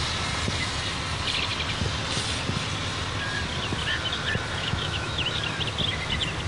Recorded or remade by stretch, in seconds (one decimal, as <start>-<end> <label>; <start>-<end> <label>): 0.0-4.6 recorded; 4.6-5.3 remade; 5.3-6.5 recorded